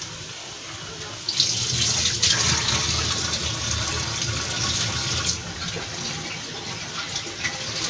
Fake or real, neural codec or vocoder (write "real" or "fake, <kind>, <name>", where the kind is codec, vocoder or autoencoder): real